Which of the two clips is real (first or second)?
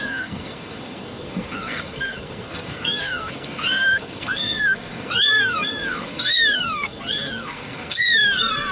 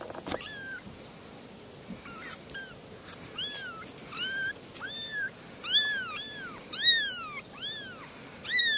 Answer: second